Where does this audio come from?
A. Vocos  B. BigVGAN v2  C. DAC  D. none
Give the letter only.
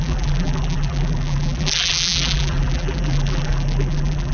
B